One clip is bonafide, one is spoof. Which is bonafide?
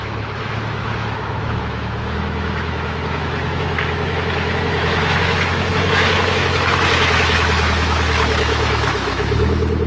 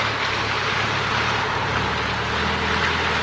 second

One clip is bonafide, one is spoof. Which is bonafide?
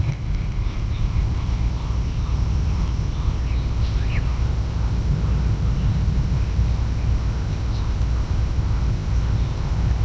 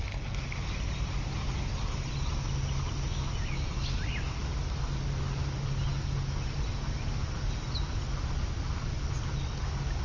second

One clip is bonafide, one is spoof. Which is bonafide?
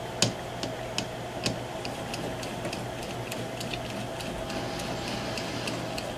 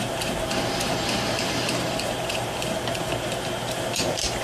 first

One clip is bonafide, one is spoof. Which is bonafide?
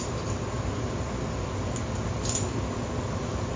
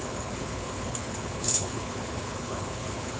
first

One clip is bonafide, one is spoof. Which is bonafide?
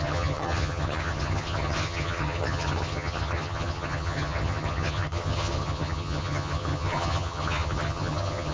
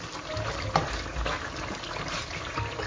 second